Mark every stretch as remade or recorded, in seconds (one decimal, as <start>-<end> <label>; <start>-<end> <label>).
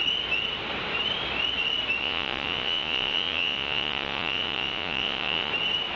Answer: 0.0-2.0 recorded; 2.0-5.5 remade; 5.5-6.0 recorded